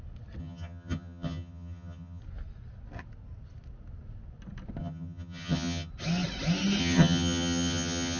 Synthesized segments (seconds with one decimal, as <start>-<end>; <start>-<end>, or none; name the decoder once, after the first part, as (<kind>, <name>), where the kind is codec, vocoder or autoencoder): 0.4-2.2 (vocoder, HiFi-GAN); 4.8-5.9; 6.8-8.2